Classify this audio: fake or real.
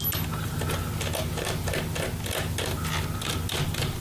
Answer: real